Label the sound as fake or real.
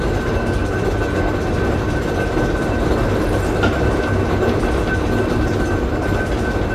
real